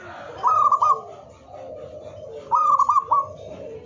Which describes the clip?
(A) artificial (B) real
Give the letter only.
B